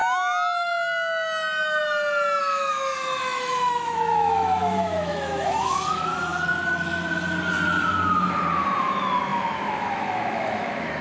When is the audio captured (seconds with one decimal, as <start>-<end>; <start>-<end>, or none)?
0.0-2.4; 6.3-8.8